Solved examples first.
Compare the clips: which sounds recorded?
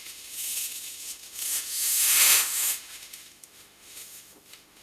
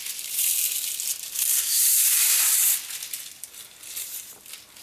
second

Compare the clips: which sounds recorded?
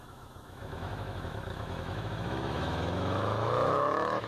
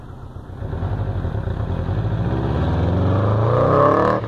second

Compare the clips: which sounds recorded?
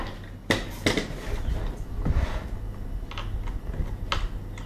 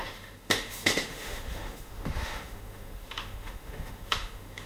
first